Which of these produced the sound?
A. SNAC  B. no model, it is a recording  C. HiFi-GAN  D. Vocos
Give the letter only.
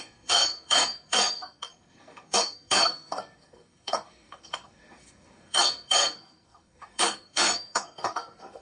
A